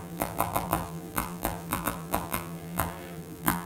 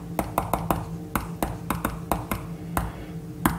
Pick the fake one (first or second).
first